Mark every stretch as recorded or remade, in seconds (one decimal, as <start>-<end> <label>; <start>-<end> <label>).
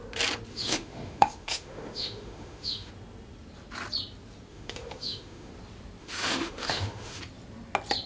0.0-0.5 recorded; 0.5-2.9 remade; 2.9-4.5 recorded; 4.5-5.5 remade; 5.5-6.0 recorded; 6.0-7.2 remade; 7.2-8.1 recorded